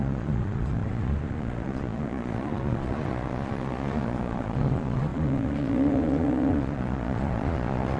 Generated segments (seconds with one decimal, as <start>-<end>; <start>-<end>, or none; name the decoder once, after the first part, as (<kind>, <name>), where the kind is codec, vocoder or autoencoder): 0.0-8.0 (vocoder, Vocos)